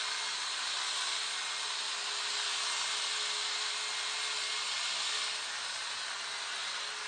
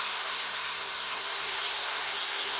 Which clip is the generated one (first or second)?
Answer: second